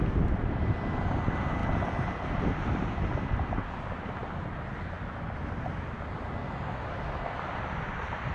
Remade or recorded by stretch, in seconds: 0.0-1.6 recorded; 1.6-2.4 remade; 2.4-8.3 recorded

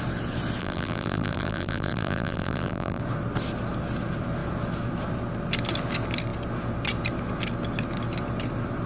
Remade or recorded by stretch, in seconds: 0.0-0.6 recorded; 0.6-3.0 remade; 3.0-8.9 recorded

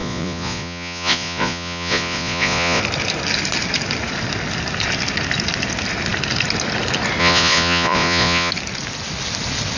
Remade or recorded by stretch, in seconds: 0.0-2.8 remade; 2.8-7.2 recorded; 7.2-8.5 remade; 8.5-9.8 recorded

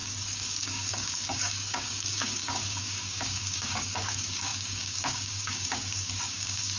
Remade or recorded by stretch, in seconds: 0.0-6.8 remade

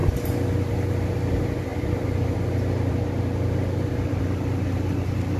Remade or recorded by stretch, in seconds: 0.0-5.4 recorded

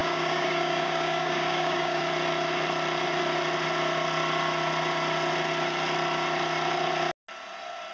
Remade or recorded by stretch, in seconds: 0.0-2.0 remade; 2.0-7.9 recorded

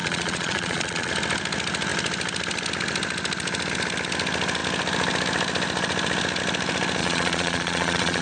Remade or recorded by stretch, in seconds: 0.0-1.1 remade; 1.1-7.0 recorded; 7.0-8.2 remade